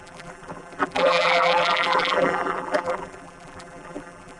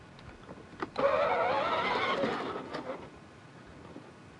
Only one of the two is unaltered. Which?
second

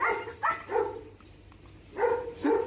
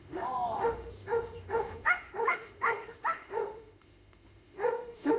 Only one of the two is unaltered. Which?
first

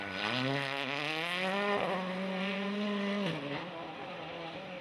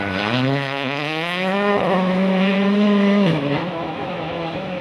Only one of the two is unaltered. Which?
first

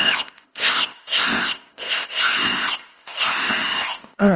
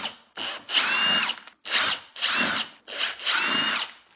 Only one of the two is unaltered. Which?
second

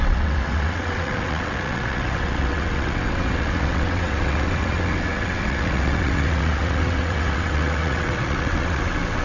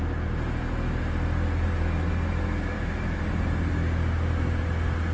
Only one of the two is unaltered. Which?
second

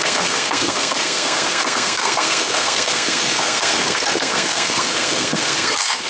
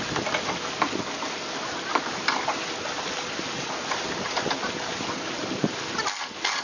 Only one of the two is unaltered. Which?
second